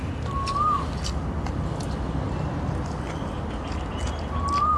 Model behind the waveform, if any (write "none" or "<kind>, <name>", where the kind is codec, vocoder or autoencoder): none